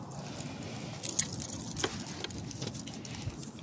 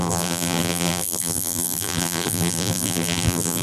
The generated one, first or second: second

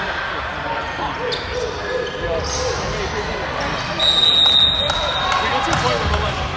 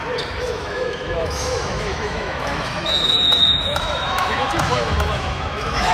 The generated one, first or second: second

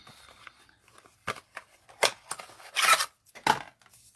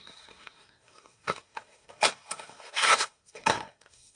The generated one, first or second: second